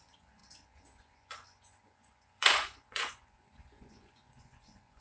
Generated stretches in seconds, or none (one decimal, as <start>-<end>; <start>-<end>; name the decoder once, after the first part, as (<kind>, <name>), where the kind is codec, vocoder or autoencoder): 0.0-5.0 (vocoder, Vocos)